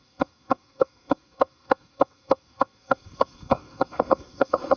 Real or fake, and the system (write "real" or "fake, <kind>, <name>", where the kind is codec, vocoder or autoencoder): fake, codec, SNAC